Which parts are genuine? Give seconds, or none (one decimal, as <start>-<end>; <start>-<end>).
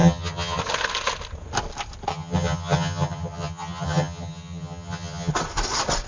0.6-2.1; 5.3-6.1